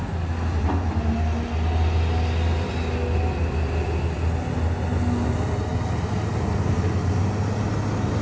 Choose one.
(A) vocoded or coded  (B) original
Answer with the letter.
B